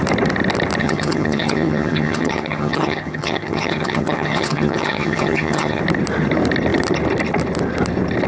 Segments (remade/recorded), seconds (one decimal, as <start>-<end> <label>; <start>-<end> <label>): 0.0-0.8 recorded; 0.8-5.8 remade; 5.8-8.3 recorded